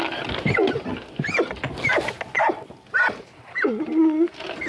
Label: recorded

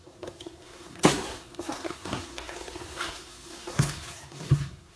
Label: remade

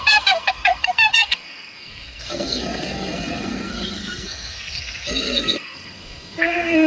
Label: remade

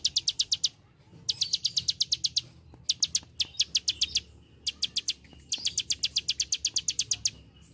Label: recorded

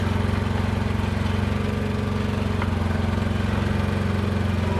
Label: recorded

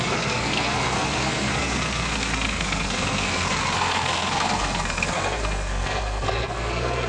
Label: remade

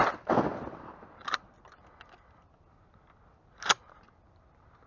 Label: recorded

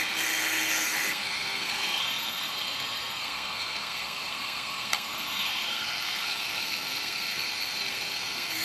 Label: remade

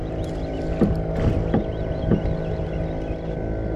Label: recorded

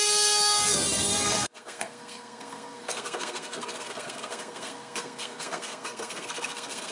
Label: remade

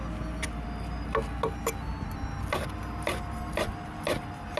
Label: recorded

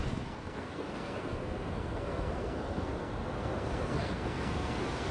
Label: remade